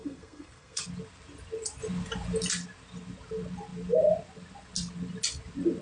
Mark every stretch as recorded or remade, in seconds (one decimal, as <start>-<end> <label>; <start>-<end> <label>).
0.0-0.8 remade; 0.8-5.8 recorded